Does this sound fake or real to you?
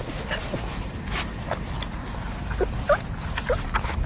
real